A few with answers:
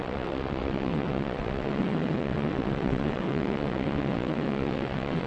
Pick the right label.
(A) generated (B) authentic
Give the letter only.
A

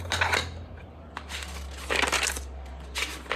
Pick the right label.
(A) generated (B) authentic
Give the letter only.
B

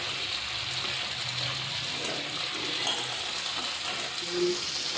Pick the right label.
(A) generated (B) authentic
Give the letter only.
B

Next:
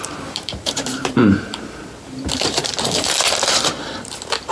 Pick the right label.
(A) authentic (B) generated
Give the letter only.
B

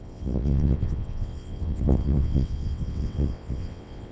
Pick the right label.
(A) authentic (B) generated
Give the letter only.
B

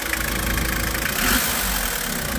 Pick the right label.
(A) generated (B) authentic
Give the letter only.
B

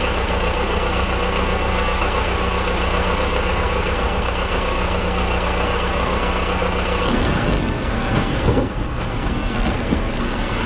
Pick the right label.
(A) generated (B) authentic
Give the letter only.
A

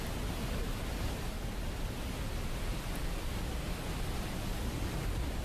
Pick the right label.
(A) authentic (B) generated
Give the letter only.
A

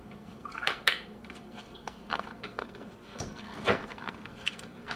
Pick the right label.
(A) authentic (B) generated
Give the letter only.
B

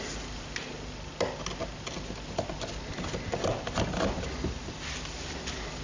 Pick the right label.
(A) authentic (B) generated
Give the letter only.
A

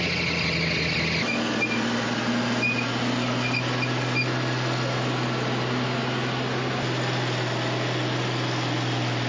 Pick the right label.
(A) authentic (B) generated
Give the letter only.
A